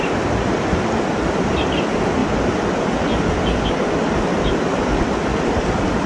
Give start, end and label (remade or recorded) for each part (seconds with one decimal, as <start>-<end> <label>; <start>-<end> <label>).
0.0-6.1 recorded